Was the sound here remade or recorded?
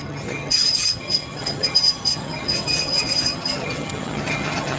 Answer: remade